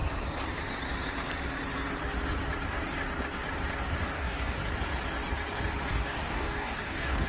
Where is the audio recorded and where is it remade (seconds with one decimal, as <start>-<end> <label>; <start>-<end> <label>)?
0.0-4.0 recorded; 4.0-4.6 remade; 4.6-5.9 recorded; 5.9-7.3 remade